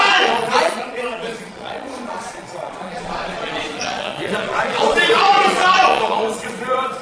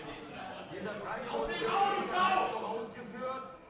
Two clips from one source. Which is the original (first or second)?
second